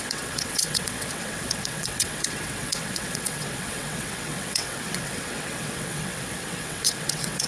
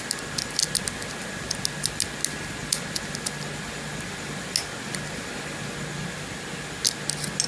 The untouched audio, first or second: second